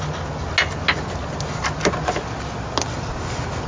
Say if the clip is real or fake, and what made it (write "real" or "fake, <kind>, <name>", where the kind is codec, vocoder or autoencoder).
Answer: real